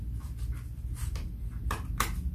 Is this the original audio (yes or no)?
yes